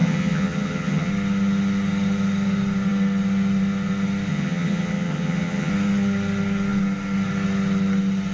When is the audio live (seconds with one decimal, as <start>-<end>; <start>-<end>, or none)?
1.1-4.3; 5.7-8.3